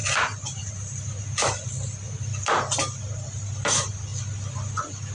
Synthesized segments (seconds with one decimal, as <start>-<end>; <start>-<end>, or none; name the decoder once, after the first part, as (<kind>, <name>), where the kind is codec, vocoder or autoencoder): none